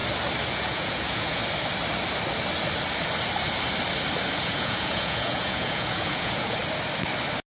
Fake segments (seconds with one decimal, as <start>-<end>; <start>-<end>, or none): 0.5-1.4; 4.4-6.6